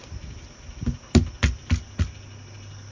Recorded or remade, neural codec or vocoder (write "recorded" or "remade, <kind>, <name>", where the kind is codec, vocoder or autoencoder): recorded